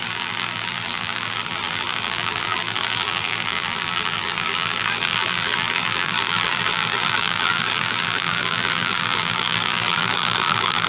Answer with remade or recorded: remade